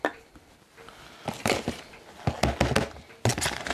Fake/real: real